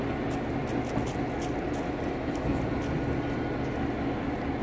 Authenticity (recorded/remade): recorded